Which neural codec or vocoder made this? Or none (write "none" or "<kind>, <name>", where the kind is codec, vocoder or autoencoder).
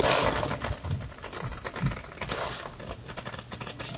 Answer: none